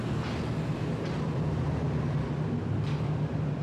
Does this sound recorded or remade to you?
recorded